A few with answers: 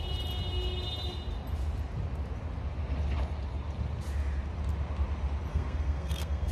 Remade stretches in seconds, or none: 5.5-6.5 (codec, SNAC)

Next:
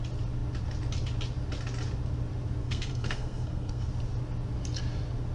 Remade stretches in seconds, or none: 2.6-3.9 (codec, SNAC)

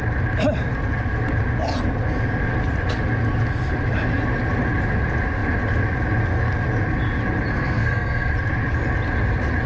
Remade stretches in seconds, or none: 7.5-8.3 (codec, SNAC)

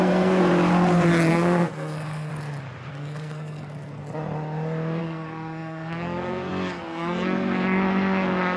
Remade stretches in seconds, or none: 0.0-0.4 (codec, SNAC); 1.3-2.3; 2.9-4.0; 5.0-8.6

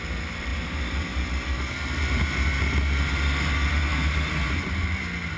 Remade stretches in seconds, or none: none

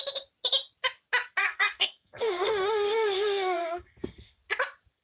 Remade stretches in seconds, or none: 1.4-4.4 (codec, SNAC)

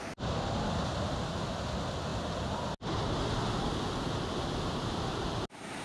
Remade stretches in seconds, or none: none